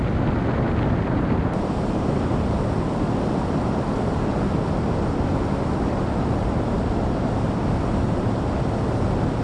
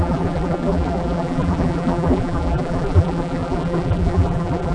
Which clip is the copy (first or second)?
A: second